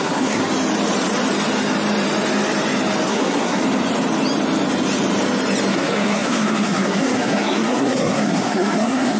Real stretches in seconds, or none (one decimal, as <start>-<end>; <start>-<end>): 0.4-3.1; 3.6-5.7

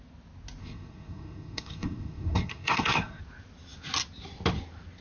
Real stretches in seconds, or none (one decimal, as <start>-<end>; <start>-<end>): 0.0-0.6; 3.2-5.0